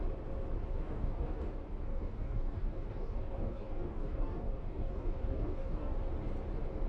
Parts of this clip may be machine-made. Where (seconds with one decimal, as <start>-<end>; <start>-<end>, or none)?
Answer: 0.7-1.5; 1.9-6.0